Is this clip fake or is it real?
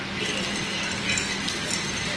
real